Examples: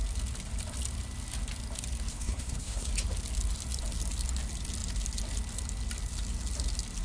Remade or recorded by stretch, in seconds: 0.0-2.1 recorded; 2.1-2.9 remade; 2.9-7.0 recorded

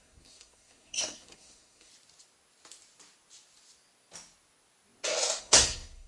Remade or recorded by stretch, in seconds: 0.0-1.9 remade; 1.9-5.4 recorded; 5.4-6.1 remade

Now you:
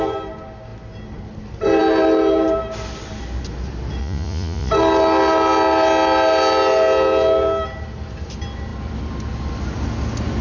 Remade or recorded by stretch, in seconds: 0.0-4.0 recorded; 4.0-4.7 remade; 4.7-10.4 recorded

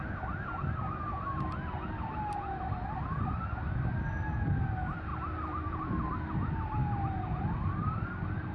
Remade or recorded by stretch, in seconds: 0.0-5.1 recorded; 5.1-5.8 remade; 5.8-8.5 recorded

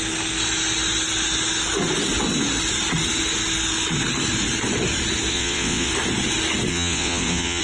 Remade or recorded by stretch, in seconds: 0.0-5.3 recorded; 5.3-5.9 remade; 5.9-6.7 recorded; 6.7-7.6 remade